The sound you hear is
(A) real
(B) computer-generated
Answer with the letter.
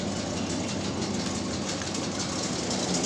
A